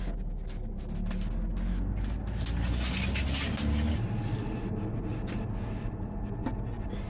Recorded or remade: recorded